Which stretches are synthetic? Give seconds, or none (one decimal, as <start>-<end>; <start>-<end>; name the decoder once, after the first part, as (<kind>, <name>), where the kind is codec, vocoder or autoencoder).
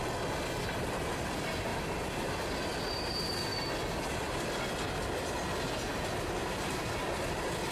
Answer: none